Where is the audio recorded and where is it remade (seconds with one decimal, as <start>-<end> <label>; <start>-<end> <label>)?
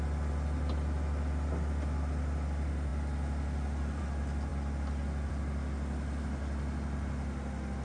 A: 0.0-7.8 recorded